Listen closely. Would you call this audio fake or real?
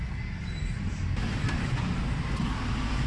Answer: real